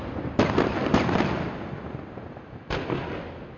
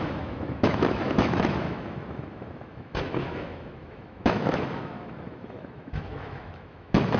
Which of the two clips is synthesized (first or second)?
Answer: second